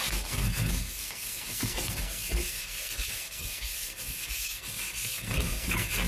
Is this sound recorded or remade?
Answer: remade